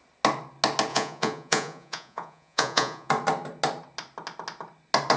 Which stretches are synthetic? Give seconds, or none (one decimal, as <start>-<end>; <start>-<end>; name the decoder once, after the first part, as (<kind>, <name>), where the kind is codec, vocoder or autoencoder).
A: 0.9-3.1 (vocoder, Vocos)